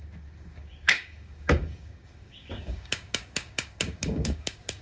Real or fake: fake